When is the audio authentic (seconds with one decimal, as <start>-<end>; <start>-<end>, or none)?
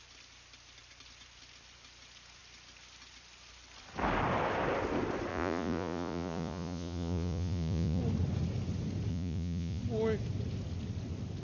0.0-5.3; 8.0-9.1; 9.8-11.4